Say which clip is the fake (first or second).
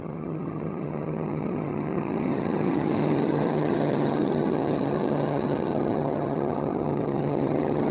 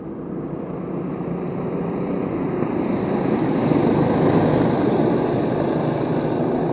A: first